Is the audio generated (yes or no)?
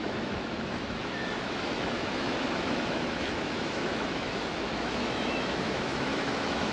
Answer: yes